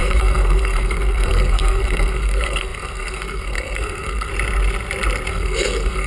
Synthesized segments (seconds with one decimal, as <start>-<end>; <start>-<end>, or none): 0.0-4.3; 5.3-6.1